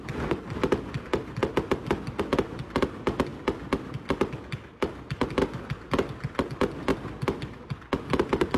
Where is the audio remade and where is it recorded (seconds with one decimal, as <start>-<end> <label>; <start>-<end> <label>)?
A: 0.0-8.6 recorded